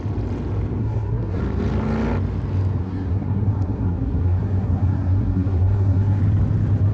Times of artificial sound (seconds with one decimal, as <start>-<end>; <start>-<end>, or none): 0.8-1.4; 2.8-6.2